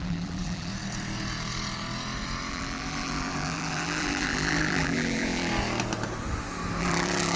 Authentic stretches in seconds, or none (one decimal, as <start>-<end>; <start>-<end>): 0.7-2.5; 5.5-6.8